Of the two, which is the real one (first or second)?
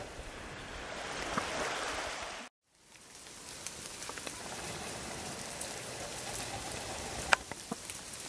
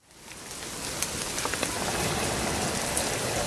second